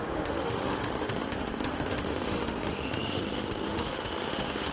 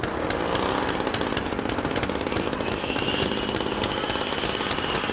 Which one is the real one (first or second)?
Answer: second